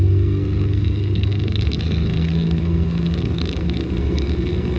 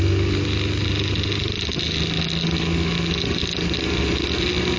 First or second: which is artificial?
first